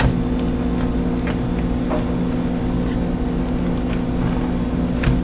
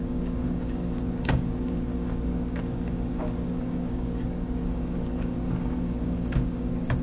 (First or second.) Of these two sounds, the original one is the first